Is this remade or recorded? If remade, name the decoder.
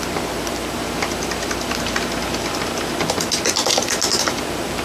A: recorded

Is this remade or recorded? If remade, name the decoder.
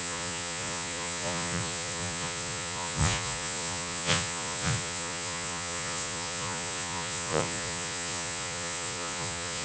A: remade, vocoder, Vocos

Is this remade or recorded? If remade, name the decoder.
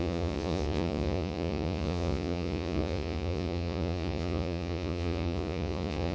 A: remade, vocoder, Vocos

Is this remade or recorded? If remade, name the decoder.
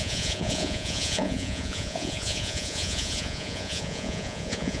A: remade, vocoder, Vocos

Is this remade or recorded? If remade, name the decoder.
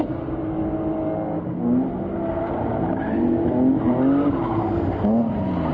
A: recorded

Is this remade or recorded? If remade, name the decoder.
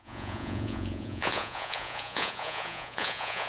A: remade, vocoder, Vocos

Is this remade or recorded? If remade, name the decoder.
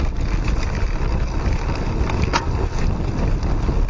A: recorded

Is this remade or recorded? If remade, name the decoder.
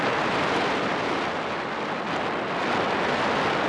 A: recorded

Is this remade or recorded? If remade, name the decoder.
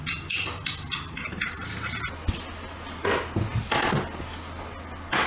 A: recorded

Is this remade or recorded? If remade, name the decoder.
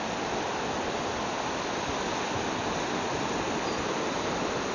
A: recorded